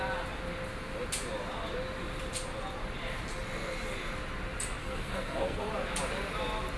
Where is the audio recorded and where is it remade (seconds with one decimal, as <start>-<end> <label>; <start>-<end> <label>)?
0.0-4.8 recorded; 4.8-5.7 remade; 5.7-6.8 recorded